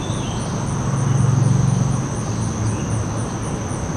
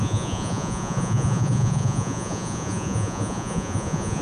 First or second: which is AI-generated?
second